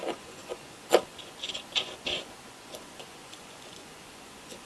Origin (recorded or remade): remade